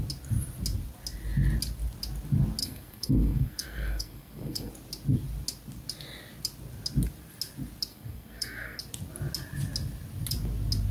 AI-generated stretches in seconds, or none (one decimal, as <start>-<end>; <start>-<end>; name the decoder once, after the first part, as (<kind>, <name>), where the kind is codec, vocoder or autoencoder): 2.6-4.7 (codec, SNAC); 7.9-8.8